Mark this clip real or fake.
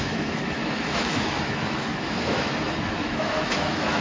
fake